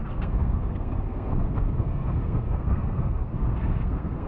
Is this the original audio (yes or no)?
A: no